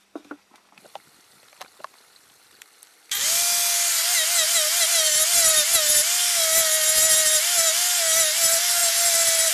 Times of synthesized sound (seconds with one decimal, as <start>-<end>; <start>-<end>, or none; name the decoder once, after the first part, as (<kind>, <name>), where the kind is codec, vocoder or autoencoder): none